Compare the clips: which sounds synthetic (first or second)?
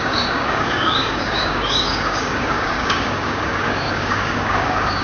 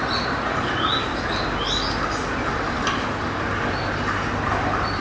first